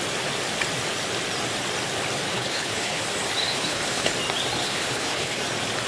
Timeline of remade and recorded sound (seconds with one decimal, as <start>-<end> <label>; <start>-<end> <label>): 0.0-2.3 recorded; 2.3-3.0 remade; 3.0-3.4 recorded; 3.4-4.1 remade; 4.1-4.6 recorded; 4.6-5.4 remade; 5.4-5.9 recorded